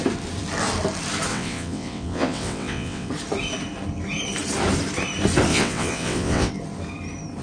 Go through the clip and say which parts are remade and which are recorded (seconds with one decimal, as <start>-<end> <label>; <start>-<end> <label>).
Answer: 0.0-1.3 recorded; 1.3-3.1 remade; 3.1-5.5 recorded; 5.5-6.5 remade; 6.5-7.4 recorded